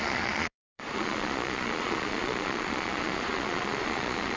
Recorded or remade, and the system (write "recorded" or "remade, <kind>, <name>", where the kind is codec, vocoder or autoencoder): remade, vocoder, Vocos